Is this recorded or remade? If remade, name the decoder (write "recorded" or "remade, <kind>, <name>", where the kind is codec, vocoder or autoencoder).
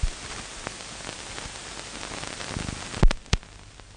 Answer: recorded